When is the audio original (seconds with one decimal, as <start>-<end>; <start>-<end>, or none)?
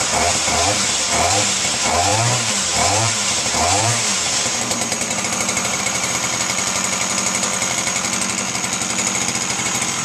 6.3-9.5